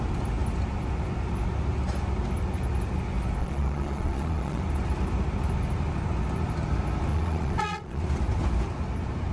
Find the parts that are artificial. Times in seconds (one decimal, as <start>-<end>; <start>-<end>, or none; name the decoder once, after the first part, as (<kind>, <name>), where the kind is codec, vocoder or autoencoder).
3.4-4.6 (vocoder, Vocos); 7.1-8.0